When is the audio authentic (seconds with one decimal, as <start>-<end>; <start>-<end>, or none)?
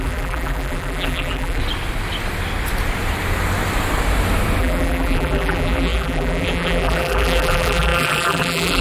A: 1.6-4.6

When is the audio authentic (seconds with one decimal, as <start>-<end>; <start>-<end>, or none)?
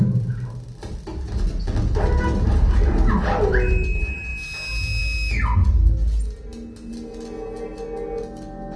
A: 0.0-8.8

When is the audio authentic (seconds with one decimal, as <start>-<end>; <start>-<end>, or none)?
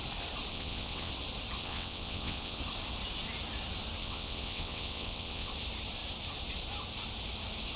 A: 0.0-0.5; 1.1-1.6; 2.6-4.0; 5.5-7.8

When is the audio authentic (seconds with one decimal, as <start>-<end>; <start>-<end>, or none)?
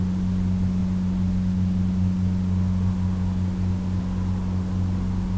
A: 0.0-5.4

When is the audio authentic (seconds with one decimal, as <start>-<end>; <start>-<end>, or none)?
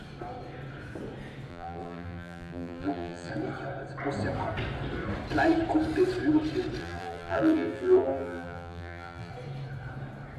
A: 0.0-1.5; 3.3-6.8; 9.3-10.4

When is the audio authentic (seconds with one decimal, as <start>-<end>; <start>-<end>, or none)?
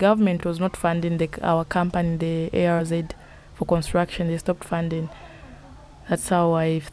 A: 0.0-6.9